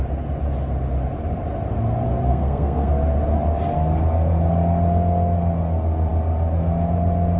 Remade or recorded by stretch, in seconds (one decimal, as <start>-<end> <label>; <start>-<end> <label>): 0.0-2.3 recorded; 2.3-2.9 remade; 2.9-7.4 recorded